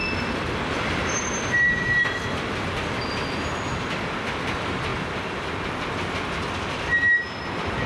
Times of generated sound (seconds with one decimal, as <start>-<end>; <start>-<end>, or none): none